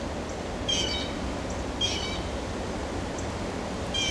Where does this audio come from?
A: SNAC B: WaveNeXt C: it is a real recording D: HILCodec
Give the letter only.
C